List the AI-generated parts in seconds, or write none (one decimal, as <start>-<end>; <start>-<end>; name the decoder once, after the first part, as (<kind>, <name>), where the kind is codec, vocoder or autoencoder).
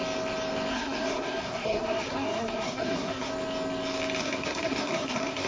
0.7-3.3 (codec, SNAC); 4.2-5.5